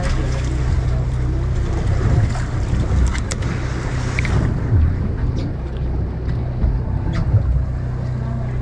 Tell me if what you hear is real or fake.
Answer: real